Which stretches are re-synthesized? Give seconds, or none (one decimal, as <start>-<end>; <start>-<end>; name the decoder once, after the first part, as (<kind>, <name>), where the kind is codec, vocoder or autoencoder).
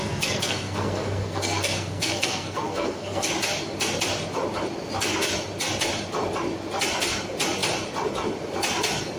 0.0-3.3 (codec, SNAC)